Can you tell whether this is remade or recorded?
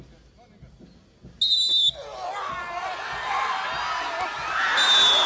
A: recorded